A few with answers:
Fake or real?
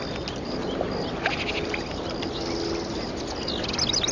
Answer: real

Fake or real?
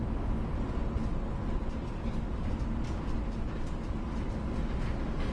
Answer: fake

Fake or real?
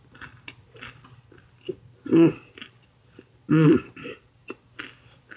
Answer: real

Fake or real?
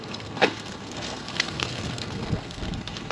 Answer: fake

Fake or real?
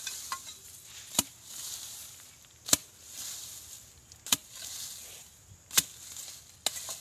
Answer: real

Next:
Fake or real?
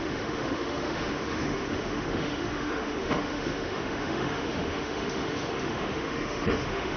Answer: fake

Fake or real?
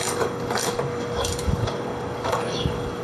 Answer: fake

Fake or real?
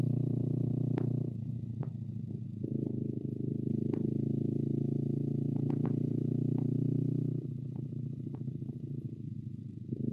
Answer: real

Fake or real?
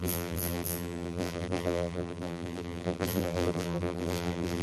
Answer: fake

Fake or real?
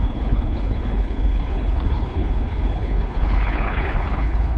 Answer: fake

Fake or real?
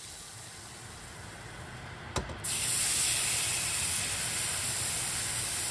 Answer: real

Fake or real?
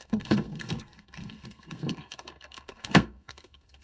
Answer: fake